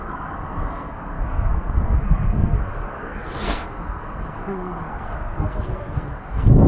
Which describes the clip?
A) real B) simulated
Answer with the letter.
B